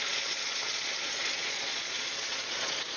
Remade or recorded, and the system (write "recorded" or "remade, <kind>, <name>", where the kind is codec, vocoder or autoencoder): remade, vocoder, Vocos